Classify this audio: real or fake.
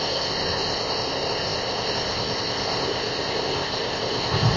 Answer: fake